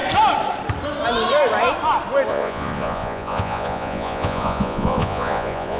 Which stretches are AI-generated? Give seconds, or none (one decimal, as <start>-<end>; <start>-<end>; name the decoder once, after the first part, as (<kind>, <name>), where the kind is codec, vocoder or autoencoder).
2.3-5.8 (vocoder, Vocos)